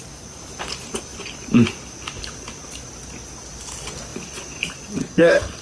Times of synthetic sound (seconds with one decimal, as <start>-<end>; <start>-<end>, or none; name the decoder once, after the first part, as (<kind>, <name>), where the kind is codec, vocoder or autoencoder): 5.0-5.6 (codec, SNAC)